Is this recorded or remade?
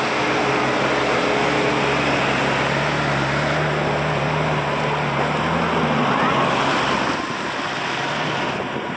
recorded